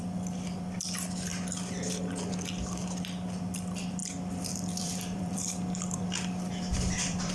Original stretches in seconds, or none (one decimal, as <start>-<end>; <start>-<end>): 1.3-2.3; 4.0-4.7